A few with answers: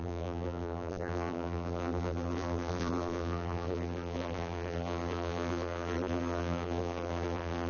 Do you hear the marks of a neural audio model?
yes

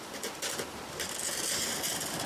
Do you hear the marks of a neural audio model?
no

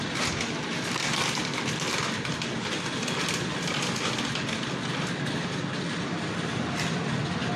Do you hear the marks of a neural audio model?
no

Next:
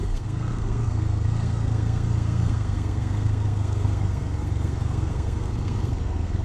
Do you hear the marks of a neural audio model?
yes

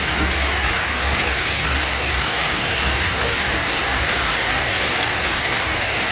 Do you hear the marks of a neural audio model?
yes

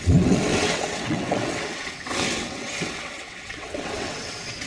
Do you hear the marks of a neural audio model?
yes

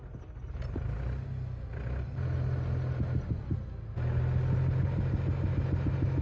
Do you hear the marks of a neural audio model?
no